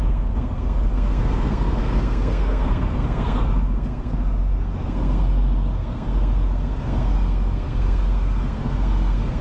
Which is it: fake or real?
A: fake